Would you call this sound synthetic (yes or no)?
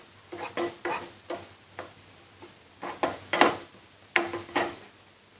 no